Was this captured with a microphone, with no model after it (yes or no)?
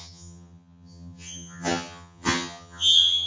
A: no